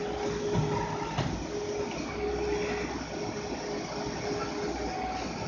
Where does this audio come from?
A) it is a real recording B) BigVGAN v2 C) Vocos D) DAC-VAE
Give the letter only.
A